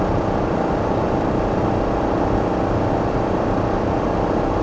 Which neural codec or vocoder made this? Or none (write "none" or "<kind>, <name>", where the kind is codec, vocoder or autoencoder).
none